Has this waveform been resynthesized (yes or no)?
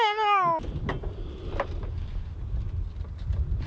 no